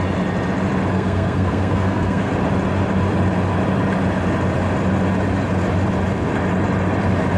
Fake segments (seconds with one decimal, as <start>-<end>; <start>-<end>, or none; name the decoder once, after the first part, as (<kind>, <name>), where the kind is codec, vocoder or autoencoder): 0.9-2.3 (codec, SNAC)